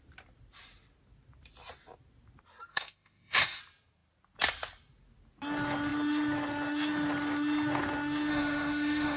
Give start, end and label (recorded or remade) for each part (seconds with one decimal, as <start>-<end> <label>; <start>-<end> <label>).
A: 0.0-2.7 recorded; 2.7-3.6 remade; 3.6-8.3 recorded; 8.3-9.2 remade